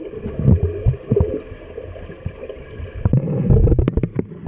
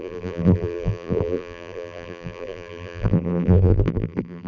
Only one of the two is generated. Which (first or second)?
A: second